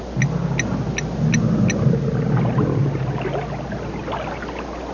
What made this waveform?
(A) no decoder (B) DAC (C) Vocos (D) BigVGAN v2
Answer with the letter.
A